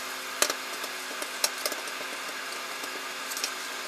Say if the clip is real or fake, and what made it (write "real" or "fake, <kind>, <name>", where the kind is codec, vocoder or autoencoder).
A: real